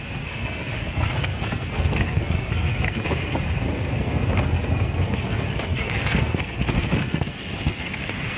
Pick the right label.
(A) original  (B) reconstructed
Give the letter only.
B